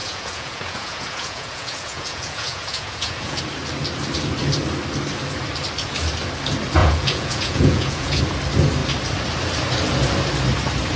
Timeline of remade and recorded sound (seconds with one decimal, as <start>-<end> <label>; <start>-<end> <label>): 0.0-3.4 remade; 3.4-6.8 recorded; 6.8-8.2 remade; 8.2-11.0 recorded